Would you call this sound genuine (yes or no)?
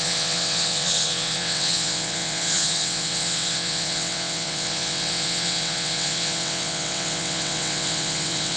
no